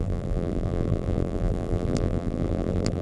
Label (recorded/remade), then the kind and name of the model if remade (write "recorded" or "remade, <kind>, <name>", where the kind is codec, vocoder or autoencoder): remade, vocoder, BigVGAN v2